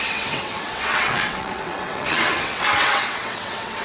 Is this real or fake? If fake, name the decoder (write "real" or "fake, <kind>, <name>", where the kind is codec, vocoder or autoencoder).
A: fake, vocoder, WaveNeXt